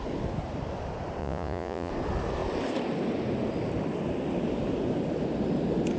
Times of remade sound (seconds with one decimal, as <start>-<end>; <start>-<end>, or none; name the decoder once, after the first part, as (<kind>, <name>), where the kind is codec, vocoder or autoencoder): 1.2-1.9 (vocoder, Vocos)